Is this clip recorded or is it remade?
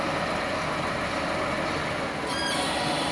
recorded